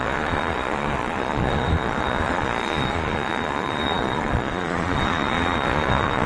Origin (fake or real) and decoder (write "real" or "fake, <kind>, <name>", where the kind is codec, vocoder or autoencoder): fake, vocoder, Vocos